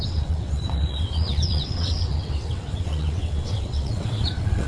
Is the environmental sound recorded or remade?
remade